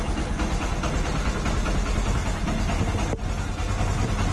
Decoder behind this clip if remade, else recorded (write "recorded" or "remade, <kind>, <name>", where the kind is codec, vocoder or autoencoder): recorded